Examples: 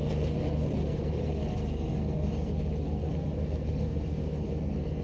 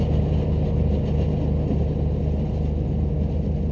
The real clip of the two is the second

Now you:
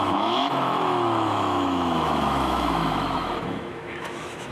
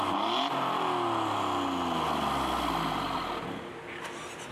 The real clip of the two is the second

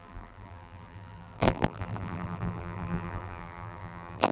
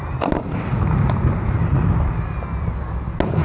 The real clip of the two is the second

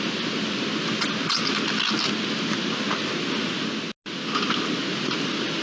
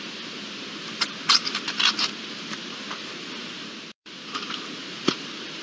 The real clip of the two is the first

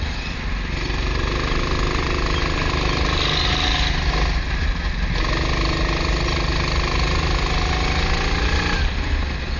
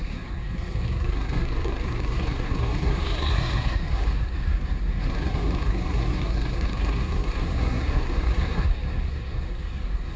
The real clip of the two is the first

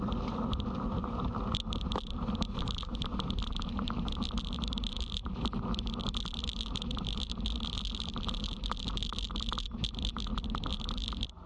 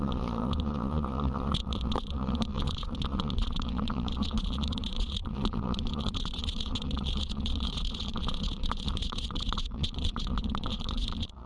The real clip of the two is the first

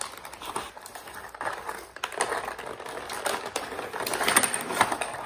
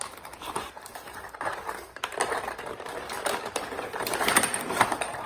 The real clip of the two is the first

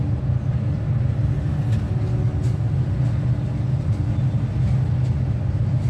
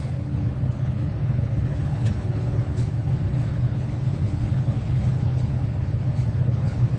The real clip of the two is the first